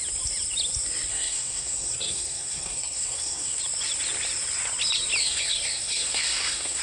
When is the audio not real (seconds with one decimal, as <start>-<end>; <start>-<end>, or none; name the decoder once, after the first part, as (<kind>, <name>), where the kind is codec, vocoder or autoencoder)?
1.1-3.6 (codec, SNAC); 5.2-6.8